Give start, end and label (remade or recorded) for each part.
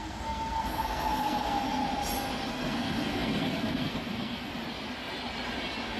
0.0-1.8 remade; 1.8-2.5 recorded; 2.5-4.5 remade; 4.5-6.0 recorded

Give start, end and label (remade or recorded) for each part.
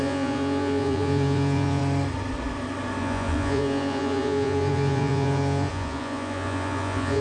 0.0-1.8 remade; 1.8-3.0 recorded; 3.0-7.2 remade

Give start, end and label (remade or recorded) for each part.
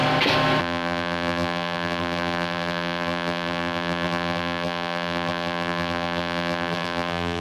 0.0-0.6 recorded; 0.6-7.4 remade